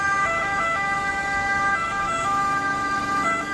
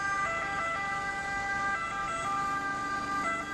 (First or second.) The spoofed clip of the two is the first